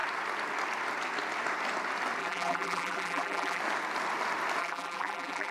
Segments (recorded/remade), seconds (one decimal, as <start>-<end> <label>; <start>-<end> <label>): 0.0-2.2 recorded; 2.2-3.6 remade; 3.6-4.6 recorded; 4.6-5.5 remade